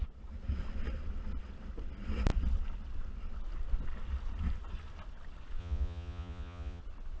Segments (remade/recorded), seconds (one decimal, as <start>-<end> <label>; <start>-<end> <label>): 0.0-5.6 recorded; 5.6-6.8 remade; 6.8-7.2 recorded